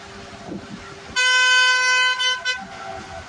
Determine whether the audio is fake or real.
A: real